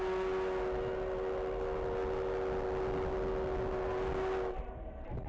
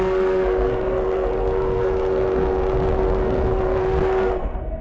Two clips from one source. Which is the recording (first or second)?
first